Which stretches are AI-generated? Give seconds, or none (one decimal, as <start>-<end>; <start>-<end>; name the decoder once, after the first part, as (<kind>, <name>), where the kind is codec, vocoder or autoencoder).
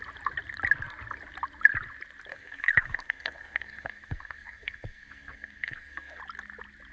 2.3-6.2 (codec, SNAC)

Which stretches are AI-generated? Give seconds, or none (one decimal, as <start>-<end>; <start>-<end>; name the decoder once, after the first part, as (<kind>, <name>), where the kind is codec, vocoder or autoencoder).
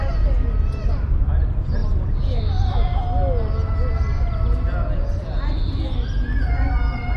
none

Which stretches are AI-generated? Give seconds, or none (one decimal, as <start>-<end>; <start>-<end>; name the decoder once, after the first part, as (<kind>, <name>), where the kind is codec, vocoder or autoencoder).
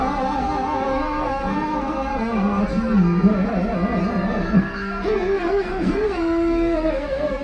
0.0-2.6 (codec, SNAC); 4.1-7.4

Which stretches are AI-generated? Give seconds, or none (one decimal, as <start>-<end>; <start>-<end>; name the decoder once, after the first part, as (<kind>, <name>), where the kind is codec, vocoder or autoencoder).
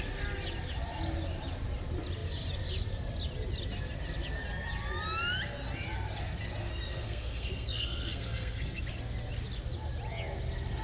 6.7-8.8 (codec, SNAC)